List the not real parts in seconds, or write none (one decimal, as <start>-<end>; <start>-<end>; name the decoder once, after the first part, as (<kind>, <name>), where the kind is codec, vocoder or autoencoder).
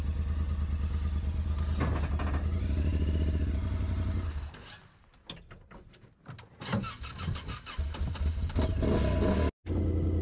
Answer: none